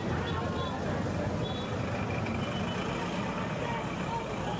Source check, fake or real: real